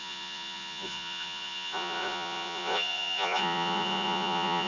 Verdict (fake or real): fake